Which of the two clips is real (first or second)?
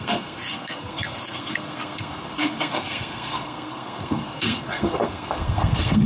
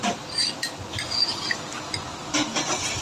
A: second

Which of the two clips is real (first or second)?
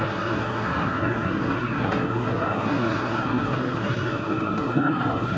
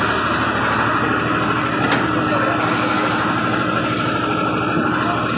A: second